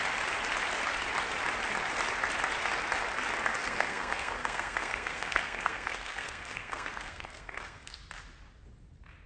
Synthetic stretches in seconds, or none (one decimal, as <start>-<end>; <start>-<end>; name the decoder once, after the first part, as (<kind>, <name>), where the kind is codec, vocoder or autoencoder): 3.6-8.0 (codec, SNAC)